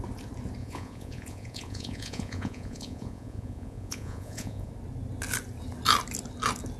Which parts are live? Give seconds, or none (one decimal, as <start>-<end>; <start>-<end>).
0.0-0.6; 4.7-6.8